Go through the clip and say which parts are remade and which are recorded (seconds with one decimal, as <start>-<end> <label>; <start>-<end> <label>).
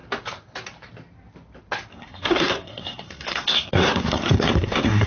0.0-1.9 recorded; 1.9-5.1 remade